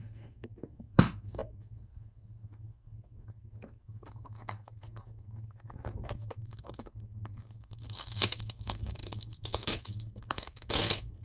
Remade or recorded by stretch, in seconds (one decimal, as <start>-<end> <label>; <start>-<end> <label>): 0.0-11.2 remade

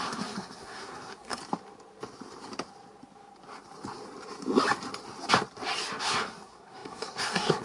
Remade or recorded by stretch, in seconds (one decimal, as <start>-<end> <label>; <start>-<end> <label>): 0.0-1.4 remade; 1.4-6.0 recorded; 6.0-7.6 remade

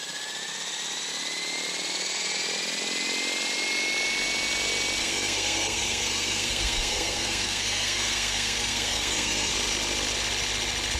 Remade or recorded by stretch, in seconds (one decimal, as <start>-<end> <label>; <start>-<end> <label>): 0.0-5.0 recorded; 5.0-9.5 remade; 9.5-11.0 recorded

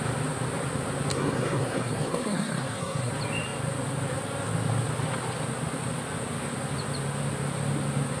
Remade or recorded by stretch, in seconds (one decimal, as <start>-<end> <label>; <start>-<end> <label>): 0.0-1.1 recorded; 1.1-3.1 remade; 3.1-8.2 recorded